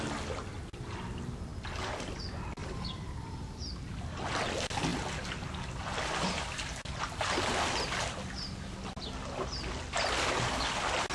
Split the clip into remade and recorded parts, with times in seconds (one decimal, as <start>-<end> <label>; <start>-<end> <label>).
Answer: 0.0-2.6 recorded; 2.6-3.6 remade; 3.6-11.1 recorded